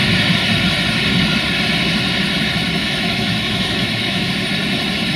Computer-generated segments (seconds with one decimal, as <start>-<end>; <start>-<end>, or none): 2.8-4.3